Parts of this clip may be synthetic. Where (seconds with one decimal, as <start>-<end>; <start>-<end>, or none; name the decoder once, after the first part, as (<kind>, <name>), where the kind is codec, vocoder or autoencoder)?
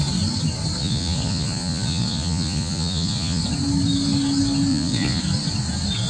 0.8-3.4 (vocoder, Vocos); 4.7-5.2